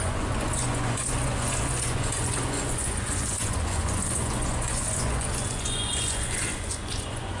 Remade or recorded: remade